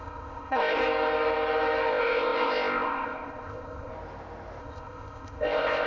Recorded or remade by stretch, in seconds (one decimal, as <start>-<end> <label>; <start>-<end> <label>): 0.0-0.8 remade; 0.8-1.9 recorded; 1.9-3.9 remade; 3.9-4.6 recorded; 4.6-5.9 remade